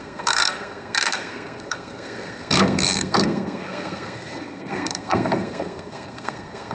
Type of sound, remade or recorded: remade